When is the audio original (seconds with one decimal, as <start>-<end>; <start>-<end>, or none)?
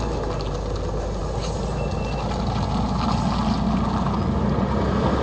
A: 0.0-5.2